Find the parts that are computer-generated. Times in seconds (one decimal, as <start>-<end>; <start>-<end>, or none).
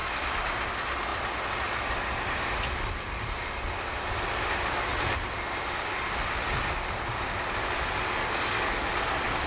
8.2-8.9